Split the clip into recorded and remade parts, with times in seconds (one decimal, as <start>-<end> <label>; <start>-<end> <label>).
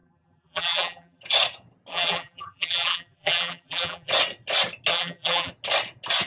0.0-1.2 remade; 1.2-1.9 recorded; 1.9-4.1 remade; 4.1-4.9 recorded; 4.9-5.5 remade; 5.5-6.3 recorded